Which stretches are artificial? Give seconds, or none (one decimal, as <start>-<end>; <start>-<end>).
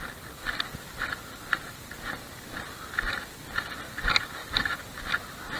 4.4-5.1